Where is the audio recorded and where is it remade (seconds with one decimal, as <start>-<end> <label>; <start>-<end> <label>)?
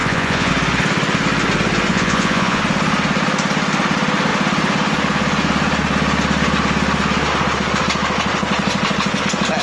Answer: 0.0-0.5 remade; 0.5-1.9 recorded; 1.9-2.6 remade; 2.6-9.6 recorded